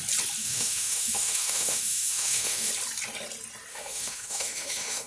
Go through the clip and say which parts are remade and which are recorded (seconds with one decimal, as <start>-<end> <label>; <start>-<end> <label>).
0.0-0.4 recorded; 0.4-2.7 remade; 2.7-3.7 recorded; 3.7-5.1 remade